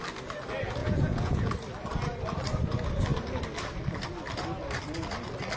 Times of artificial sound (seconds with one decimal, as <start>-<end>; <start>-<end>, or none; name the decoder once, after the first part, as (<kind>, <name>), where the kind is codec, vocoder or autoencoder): 0.8-1.5 (vocoder, Vocos)